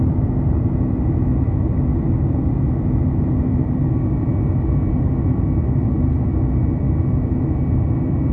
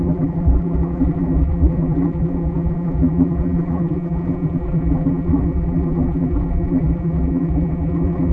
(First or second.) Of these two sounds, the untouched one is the first